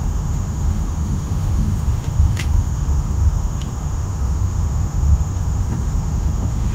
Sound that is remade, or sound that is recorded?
remade